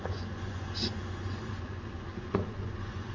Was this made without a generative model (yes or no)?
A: no